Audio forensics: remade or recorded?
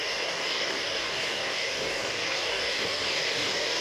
remade